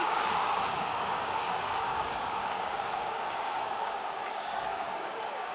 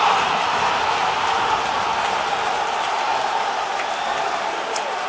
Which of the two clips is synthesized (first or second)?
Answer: first